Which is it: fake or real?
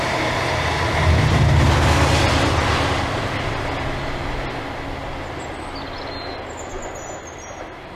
real